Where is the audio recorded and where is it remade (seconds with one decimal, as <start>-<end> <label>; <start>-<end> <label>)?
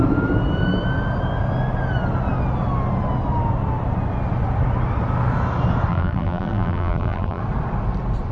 0.0-5.9 recorded; 5.9-7.4 remade; 7.4-8.3 recorded